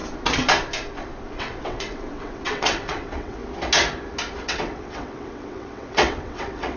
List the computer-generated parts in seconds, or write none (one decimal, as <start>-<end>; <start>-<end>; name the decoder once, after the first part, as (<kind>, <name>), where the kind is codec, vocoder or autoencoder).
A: 1.3-3.4 (vocoder, WaveNeXt); 4.4-6.8